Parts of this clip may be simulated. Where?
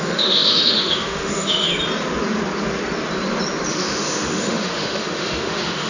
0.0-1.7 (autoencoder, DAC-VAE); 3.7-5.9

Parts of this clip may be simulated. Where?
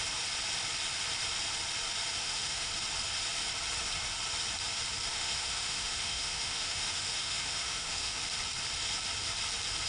2.2-2.7 (autoencoder, DAC-VAE); 5.1-8.2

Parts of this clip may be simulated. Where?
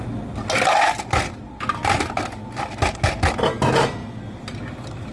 none